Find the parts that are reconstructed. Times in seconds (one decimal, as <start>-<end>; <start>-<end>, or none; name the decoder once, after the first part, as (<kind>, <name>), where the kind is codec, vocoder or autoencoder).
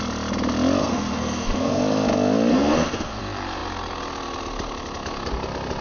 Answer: 0.8-1.8 (codec, SNAC); 2.5-3.2